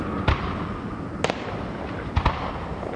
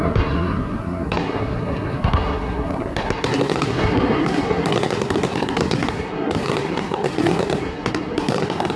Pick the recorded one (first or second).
first